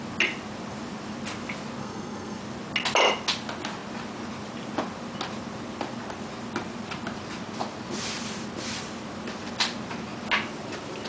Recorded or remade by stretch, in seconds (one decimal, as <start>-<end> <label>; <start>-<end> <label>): 0.0-1.8 recorded; 1.8-2.4 remade; 2.4-11.1 recorded

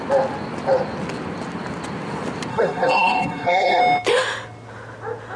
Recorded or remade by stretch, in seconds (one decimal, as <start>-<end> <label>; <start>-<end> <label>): 0.0-2.5 recorded; 2.5-3.8 remade; 3.8-5.4 recorded